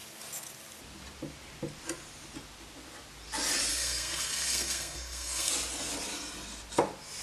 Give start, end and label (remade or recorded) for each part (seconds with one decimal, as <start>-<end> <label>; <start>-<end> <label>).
0.0-3.7 recorded; 3.7-5.5 remade; 5.5-7.2 recorded